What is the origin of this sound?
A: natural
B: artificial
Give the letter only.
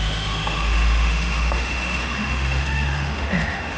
B